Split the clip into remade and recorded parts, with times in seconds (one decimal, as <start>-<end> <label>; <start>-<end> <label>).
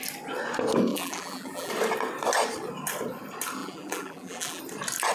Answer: 0.0-0.9 recorded; 0.9-1.7 remade; 1.7-3.6 recorded; 3.6-4.6 remade; 4.6-5.1 recorded